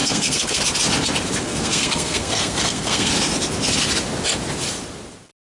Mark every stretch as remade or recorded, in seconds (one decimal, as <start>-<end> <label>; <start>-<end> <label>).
0.0-0.6 remade; 0.6-1.4 recorded; 1.4-3.1 remade; 3.1-5.6 recorded